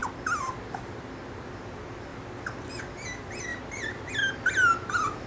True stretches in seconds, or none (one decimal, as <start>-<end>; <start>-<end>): 0.0-3.5; 4.1-5.3